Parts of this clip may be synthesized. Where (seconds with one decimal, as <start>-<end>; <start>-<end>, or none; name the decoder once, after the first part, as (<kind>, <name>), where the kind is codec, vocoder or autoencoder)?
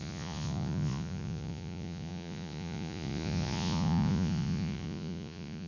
0.0-5.7 (vocoder, Vocos)